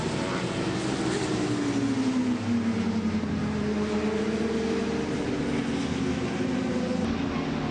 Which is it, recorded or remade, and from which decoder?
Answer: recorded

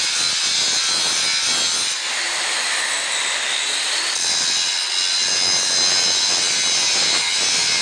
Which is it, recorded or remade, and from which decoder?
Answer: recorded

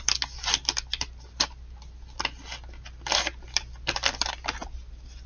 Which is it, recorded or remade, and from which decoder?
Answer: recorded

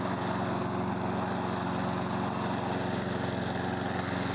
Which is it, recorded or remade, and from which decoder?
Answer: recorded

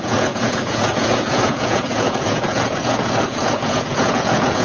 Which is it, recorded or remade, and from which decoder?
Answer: remade, vocoder, Vocos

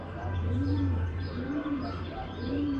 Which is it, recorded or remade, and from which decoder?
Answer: remade, vocoder, BigVGAN v2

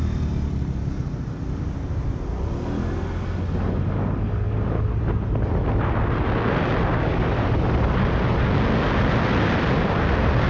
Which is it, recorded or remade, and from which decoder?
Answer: recorded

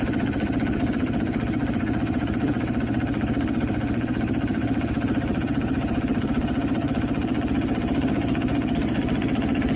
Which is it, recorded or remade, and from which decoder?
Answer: remade, vocoder, HiFi-GAN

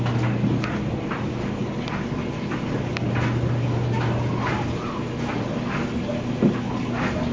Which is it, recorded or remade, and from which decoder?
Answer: recorded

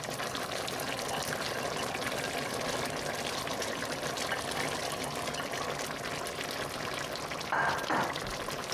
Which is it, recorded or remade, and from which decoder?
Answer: recorded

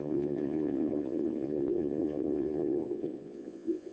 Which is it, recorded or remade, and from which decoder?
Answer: remade, vocoder, Vocos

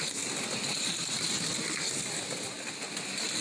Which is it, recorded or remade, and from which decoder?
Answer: recorded